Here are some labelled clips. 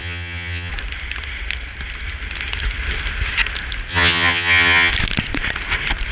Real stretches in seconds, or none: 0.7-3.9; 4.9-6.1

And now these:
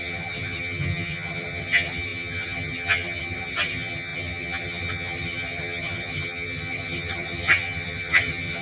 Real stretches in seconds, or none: none

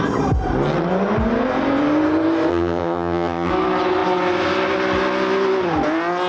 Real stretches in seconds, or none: 0.0-2.5; 3.5-6.3

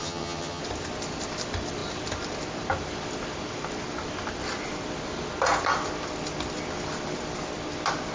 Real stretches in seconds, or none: 0.6-8.1

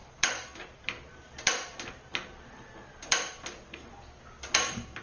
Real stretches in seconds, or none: 0.0-5.0

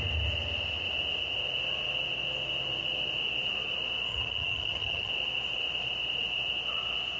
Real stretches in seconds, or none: 0.0-4.1; 5.1-7.2

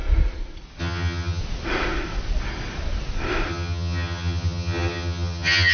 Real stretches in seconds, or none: 0.0-0.8; 1.4-3.5

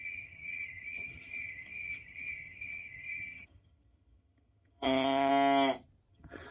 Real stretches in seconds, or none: 5.3-6.1